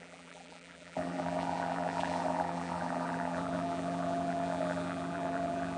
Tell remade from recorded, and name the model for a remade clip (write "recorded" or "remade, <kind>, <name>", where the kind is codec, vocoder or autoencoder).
remade, vocoder, BigVGAN v2